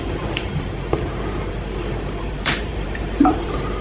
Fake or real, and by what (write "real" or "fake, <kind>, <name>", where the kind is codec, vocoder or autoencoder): fake, vocoder, BigVGAN v2